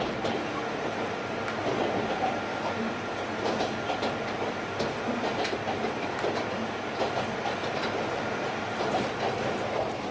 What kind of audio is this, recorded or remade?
recorded